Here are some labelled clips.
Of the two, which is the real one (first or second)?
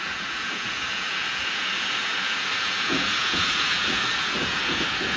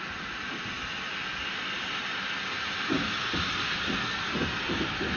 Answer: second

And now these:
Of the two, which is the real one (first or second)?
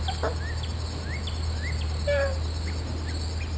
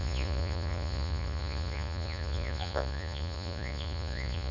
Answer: first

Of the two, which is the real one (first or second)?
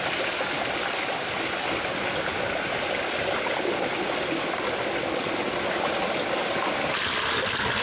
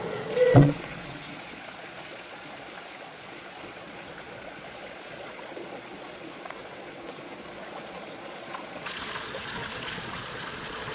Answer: first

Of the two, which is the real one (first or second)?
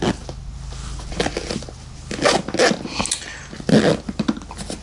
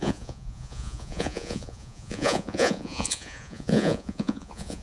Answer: first